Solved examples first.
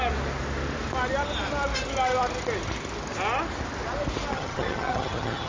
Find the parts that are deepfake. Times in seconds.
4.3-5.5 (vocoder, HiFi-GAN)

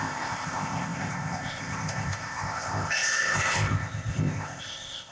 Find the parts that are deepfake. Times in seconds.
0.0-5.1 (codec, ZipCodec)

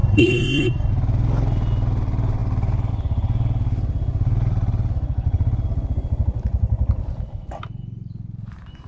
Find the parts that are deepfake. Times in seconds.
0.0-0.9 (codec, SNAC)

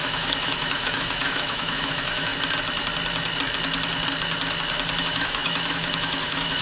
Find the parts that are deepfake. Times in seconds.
0.0-2.3 (autoencoder, DAC-VAE); 5.0-6.6